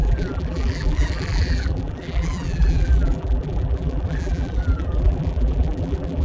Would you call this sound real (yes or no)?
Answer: no